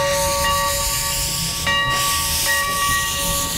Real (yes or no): yes